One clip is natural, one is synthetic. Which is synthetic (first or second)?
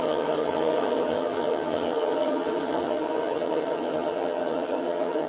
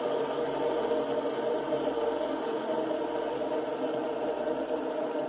first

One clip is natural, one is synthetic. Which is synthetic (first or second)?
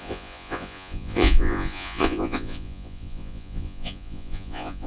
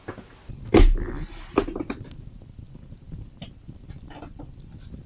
first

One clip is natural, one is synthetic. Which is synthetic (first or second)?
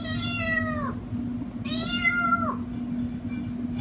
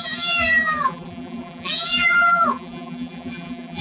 second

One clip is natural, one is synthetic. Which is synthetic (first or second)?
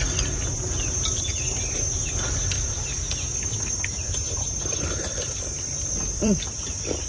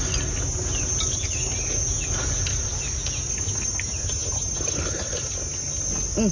first